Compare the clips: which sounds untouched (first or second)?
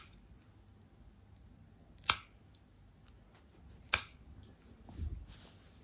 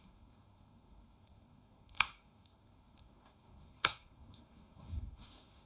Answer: first